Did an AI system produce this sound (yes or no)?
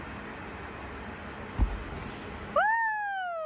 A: no